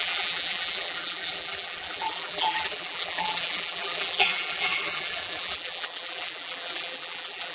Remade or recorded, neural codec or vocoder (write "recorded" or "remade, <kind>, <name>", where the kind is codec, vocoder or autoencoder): remade, vocoder, BigVGAN v2